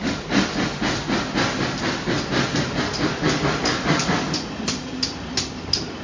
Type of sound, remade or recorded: recorded